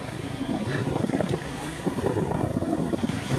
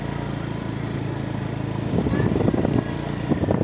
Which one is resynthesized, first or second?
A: first